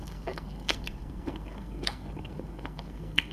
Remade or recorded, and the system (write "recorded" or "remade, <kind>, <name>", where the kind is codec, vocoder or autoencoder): remade, codec, SNAC